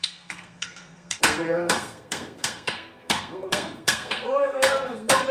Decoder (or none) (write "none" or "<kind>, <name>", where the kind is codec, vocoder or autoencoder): codec, SNAC